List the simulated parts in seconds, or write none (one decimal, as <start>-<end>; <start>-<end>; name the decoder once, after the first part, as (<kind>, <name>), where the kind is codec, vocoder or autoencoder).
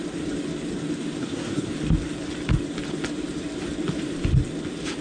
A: 1.2-1.7 (codec, SNAC)